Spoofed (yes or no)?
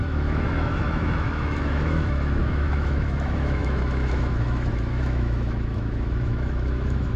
yes